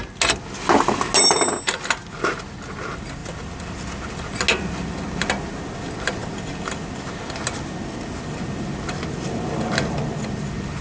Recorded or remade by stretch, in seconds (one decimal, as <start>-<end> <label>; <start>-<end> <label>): 0.0-1.2 recorded; 1.2-1.8 remade; 1.8-3.2 recorded; 3.2-4.3 remade; 4.3-10.8 recorded